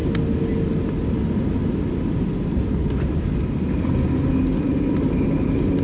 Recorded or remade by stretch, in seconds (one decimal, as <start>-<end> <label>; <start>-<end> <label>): 0.0-5.8 recorded